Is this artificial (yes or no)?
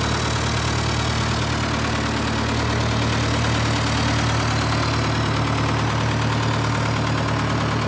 no